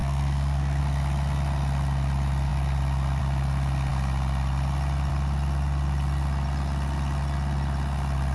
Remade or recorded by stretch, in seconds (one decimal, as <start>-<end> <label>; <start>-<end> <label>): 0.0-0.8 remade; 0.8-8.3 recorded